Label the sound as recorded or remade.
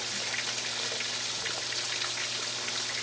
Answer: recorded